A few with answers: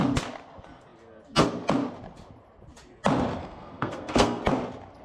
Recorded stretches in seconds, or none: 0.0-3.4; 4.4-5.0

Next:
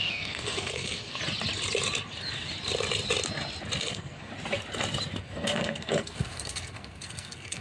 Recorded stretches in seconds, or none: 1.2-3.8; 4.3-5.2